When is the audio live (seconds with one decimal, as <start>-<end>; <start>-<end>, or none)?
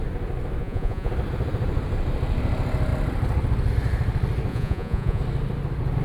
0.0-0.6; 1.1-4.5; 5.2-6.0